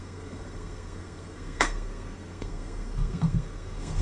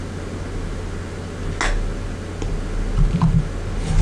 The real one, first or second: second